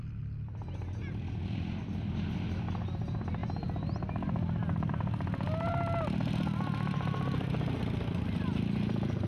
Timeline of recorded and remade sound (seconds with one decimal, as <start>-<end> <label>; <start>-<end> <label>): 0.0-9.3 recorded